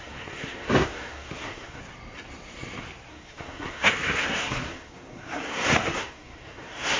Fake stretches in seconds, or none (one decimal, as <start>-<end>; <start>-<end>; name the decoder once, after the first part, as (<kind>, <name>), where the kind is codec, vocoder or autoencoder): 0.0-1.8 (codec, SNAC); 3.1-7.0